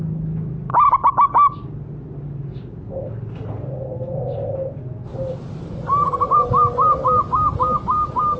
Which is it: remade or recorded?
recorded